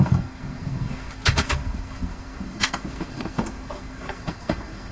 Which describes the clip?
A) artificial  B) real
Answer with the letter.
A